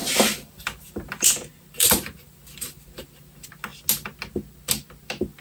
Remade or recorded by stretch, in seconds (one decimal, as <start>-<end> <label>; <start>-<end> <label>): 0.0-3.2 remade; 3.2-5.4 recorded